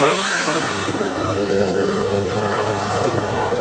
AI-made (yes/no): yes